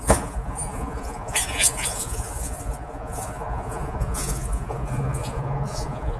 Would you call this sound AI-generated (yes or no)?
yes